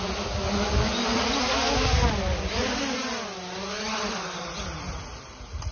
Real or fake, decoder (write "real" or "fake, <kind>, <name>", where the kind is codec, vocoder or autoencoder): real